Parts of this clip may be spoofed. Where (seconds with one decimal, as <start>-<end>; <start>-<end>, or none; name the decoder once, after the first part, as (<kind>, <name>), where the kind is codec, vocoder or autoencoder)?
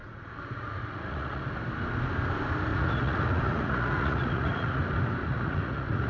0.0-1.4 (vocoder, Vocos); 2.7-4.8; 5.2-6.1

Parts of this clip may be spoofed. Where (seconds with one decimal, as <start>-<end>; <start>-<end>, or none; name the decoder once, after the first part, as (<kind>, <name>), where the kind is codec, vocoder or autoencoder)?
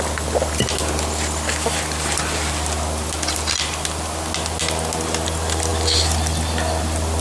none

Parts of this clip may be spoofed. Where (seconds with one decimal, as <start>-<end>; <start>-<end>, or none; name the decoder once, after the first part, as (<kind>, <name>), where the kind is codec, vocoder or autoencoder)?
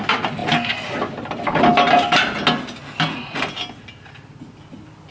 none